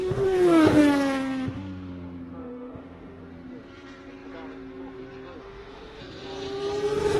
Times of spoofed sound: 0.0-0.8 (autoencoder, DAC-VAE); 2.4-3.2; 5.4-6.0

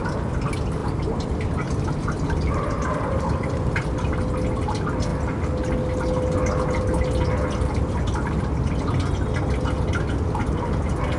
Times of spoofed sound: none

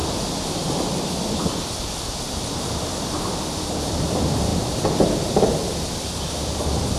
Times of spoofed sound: 0.0-7.0 (vocoder, BigVGAN v2)

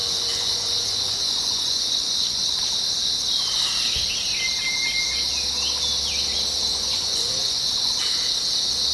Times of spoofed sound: 0.0-2.6 (vocoder, Vocos); 6.7-7.9